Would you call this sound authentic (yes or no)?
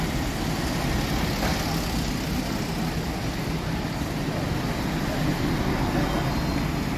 yes